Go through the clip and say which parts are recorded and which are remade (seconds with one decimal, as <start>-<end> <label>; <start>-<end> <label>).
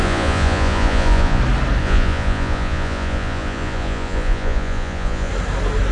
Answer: 0.0-1.4 remade; 1.4-1.8 recorded; 1.8-5.3 remade; 5.3-5.9 recorded